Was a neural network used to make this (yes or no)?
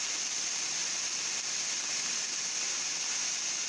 no